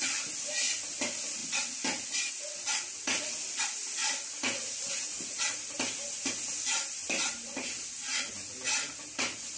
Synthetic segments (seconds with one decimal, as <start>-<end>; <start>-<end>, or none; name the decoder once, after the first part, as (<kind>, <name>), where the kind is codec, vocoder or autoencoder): none